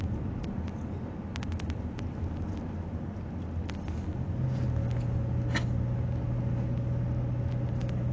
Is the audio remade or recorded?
recorded